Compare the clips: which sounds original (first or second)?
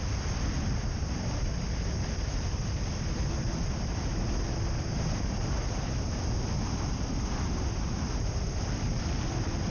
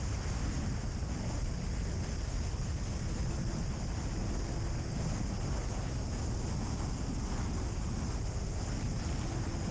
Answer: second